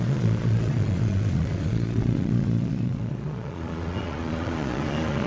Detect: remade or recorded remade